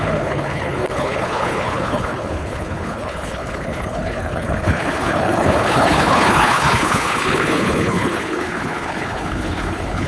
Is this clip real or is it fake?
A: fake